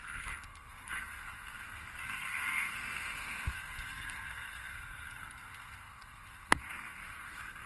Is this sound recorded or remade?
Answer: remade